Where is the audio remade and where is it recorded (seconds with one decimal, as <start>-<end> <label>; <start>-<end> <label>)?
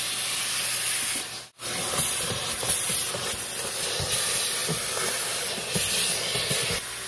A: 0.0-7.1 recorded